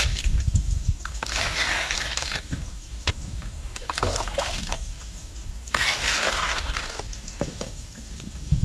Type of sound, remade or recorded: remade